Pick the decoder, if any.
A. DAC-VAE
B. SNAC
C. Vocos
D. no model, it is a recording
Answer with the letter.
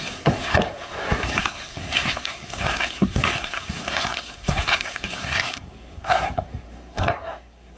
B